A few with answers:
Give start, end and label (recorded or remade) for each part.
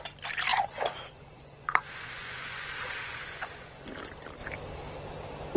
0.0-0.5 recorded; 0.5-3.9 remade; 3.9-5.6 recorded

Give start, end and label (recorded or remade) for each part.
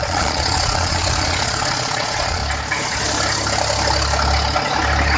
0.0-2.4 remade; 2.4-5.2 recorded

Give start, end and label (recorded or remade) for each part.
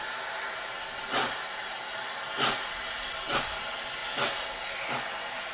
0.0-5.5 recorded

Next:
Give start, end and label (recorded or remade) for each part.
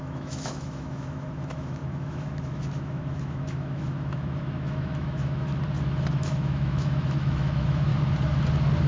0.0-5.5 remade; 5.5-6.1 recorded; 6.1-7.9 remade; 7.9-8.9 recorded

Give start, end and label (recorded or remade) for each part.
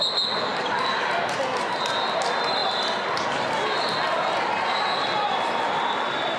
0.0-6.4 recorded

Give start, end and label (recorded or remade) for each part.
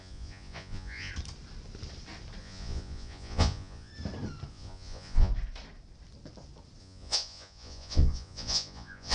0.0-1.1 remade; 1.1-2.4 recorded; 2.4-3.9 remade; 3.9-4.5 recorded; 4.5-5.3 remade; 5.3-6.8 recorded; 6.8-9.1 remade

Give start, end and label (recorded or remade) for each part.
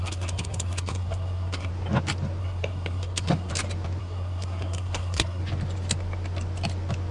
0.0-1.7 remade; 1.7-2.4 recorded; 2.4-3.5 remade; 3.5-4.0 recorded; 4.0-5.4 remade; 5.4-7.1 recorded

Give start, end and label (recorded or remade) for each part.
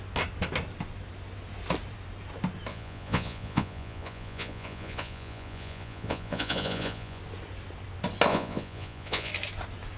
0.0-2.7 recorded; 2.7-7.2 remade; 7.2-8.3 recorded; 8.3-9.3 remade; 9.3-10.0 recorded